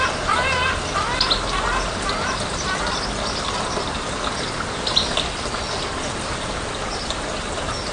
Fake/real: real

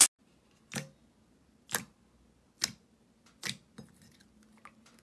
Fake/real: real